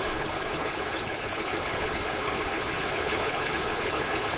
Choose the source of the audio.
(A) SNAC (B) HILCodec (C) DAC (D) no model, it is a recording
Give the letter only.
B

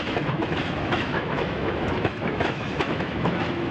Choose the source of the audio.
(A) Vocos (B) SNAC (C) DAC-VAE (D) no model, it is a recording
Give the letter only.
C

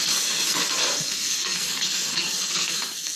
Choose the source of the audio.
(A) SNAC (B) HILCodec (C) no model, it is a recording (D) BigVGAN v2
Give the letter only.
A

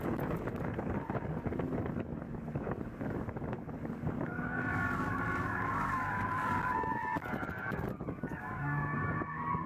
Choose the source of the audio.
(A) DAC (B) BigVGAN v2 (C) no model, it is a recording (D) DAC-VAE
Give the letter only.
A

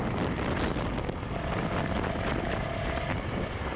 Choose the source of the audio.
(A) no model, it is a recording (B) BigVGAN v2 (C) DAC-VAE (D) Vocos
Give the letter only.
A